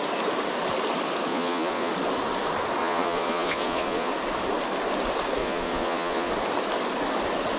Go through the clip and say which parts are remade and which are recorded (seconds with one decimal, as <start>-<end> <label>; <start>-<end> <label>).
0.0-1.3 recorded; 1.3-1.9 remade; 1.9-2.8 recorded; 2.8-4.1 remade; 4.1-5.4 recorded; 5.4-6.3 remade; 6.3-7.6 recorded